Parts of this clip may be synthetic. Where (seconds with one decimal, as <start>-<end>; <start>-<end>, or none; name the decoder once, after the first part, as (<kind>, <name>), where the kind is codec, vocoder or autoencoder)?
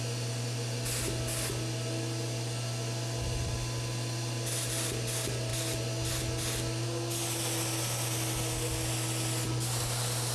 none